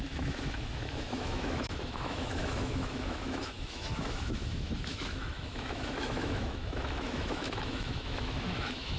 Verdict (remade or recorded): remade